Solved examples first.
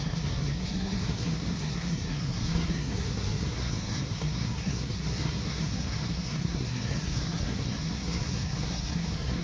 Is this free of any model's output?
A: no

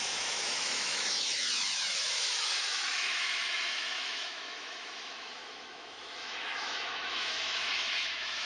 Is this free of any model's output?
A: no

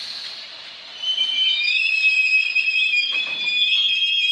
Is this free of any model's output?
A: no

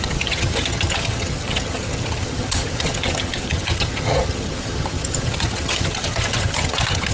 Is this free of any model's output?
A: no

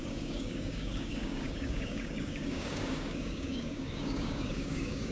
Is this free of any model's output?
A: no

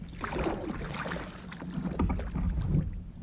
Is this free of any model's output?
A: yes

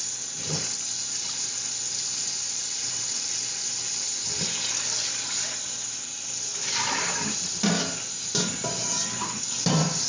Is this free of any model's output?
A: yes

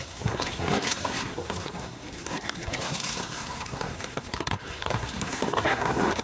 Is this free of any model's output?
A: no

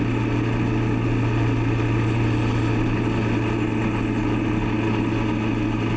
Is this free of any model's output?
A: yes